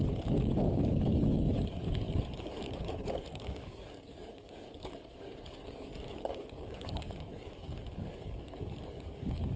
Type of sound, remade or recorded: remade